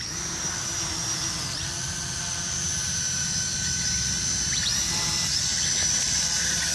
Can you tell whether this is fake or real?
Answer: fake